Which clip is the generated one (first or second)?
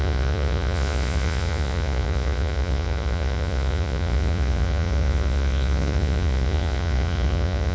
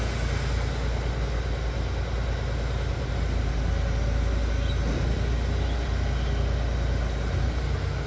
first